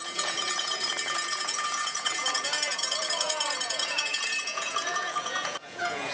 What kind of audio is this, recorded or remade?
remade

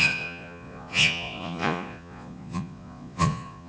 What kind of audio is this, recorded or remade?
remade